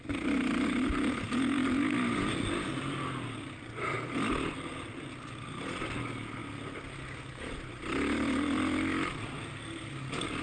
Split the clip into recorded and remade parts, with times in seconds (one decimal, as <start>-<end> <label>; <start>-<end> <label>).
0.0-10.4 recorded